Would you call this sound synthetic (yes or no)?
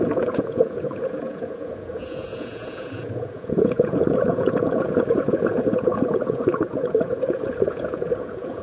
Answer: yes